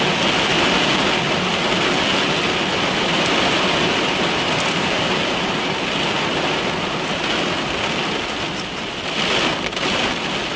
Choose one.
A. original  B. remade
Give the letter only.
A